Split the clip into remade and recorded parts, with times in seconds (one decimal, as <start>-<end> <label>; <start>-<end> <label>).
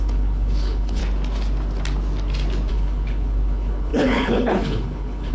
0.0-1.0 remade; 1.0-2.7 recorded; 2.7-5.3 remade